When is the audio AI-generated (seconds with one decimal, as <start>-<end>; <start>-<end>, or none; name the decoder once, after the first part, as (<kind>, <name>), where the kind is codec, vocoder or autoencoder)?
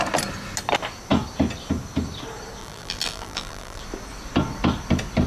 2.6-3.8 (vocoder, BigVGAN v2)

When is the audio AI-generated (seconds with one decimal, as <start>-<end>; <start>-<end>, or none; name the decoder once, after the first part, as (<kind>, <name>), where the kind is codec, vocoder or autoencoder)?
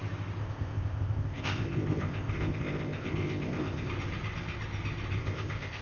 0.4-3.9 (codec, ZipCodec); 5.2-5.8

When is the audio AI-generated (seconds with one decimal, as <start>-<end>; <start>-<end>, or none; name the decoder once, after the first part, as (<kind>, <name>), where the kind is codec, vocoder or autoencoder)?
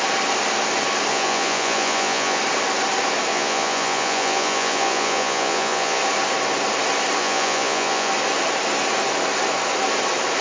1.1-2.4 (vocoder, Vocos); 3.3-6.0; 7.2-8.1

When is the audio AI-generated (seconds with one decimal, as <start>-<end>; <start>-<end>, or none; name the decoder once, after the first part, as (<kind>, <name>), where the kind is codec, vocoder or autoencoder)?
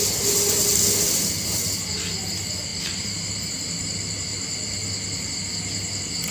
2.7-3.3 (vocoder, BigVGAN v2)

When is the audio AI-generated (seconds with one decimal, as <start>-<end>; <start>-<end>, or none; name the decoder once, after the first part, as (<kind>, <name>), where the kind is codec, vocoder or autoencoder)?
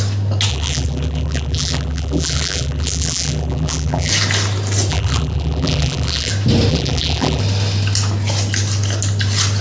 0.5-4.1 (vocoder, BigVGAN v2); 4.9-6.3; 6.7-7.4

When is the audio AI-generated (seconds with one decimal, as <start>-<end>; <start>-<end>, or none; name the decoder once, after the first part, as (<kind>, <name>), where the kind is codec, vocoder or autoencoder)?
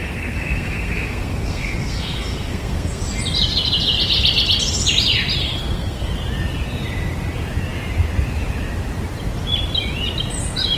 0.0-3.0 (codec, SNAC); 5.4-6.1